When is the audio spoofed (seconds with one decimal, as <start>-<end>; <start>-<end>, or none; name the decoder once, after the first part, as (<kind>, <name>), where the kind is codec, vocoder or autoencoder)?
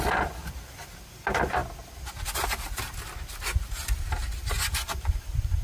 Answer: none